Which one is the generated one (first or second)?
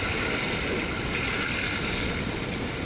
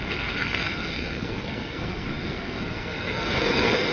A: second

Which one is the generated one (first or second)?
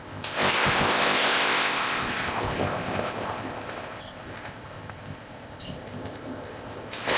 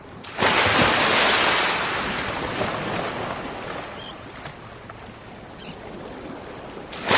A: first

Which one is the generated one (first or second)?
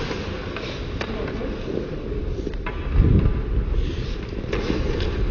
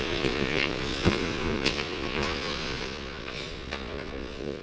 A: second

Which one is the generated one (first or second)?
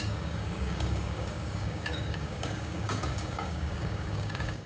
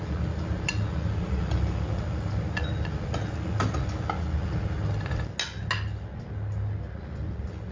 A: first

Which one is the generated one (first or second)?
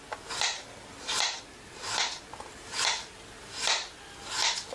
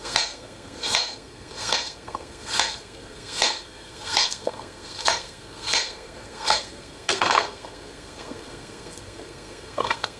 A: second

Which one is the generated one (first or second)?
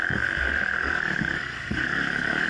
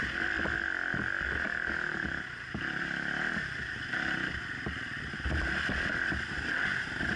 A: first